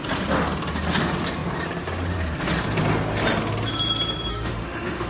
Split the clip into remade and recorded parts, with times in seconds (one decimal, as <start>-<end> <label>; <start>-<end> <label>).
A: 0.0-4.3 recorded; 4.3-5.1 remade